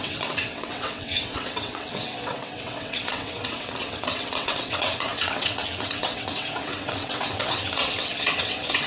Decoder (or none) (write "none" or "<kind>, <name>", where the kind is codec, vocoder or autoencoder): vocoder, WaveNeXt